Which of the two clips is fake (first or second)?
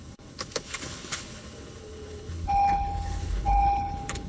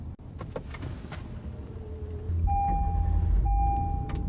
first